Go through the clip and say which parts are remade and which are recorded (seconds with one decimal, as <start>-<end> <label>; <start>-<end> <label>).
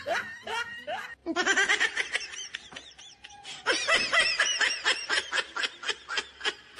0.0-1.2 recorded; 1.2-5.3 remade; 5.3-6.8 recorded